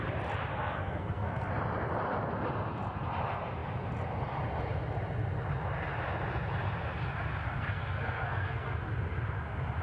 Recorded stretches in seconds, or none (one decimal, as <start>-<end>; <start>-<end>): 0.0-0.5; 1.5-7.4; 8.8-9.8